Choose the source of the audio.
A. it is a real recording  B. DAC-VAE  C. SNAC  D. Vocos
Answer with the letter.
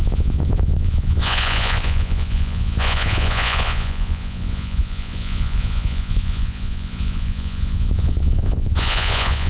D